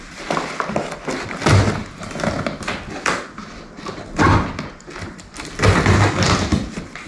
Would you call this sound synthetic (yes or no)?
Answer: no